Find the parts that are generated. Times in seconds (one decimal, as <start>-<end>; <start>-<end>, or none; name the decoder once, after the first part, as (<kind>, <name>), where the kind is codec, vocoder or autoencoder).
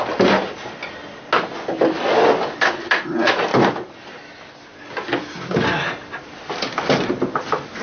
none